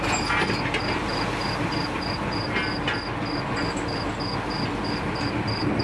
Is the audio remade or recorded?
recorded